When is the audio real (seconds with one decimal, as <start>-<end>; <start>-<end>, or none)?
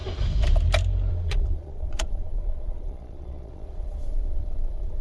0.0-1.1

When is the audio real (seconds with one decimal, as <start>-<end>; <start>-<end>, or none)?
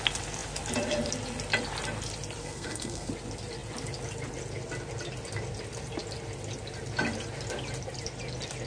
0.0-2.4; 3.1-8.7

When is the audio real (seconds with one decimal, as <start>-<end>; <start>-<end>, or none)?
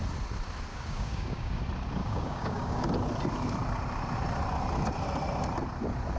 0.0-0.7; 1.6-2.0; 2.9-6.2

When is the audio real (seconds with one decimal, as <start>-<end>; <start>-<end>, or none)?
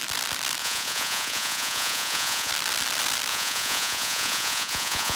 0.0-0.6; 2.5-3.3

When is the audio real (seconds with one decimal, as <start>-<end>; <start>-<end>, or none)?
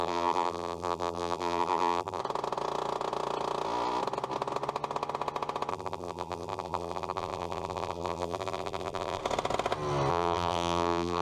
2.2-5.7; 9.2-10.1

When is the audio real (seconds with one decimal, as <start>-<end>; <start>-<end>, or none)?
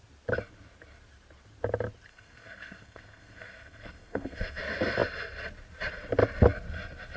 0.0-2.1; 4.6-7.2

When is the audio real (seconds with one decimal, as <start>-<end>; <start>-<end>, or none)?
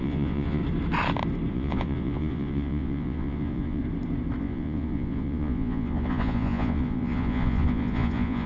0.6-1.5; 3.8-4.4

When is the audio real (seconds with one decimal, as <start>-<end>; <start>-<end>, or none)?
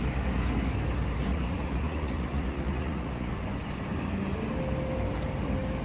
0.0-1.3; 3.3-5.8